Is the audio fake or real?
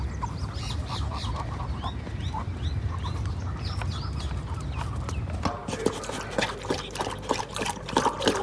real